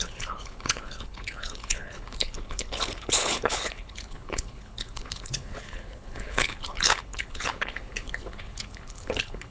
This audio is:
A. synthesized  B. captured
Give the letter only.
A